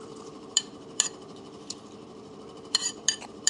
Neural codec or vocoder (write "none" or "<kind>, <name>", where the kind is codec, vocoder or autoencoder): vocoder, BigVGAN v2